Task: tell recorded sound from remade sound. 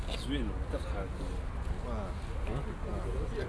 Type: recorded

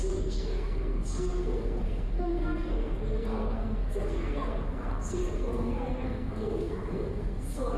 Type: remade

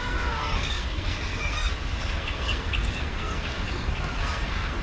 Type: remade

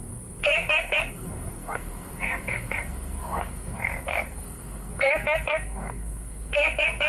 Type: remade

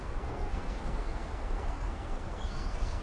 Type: remade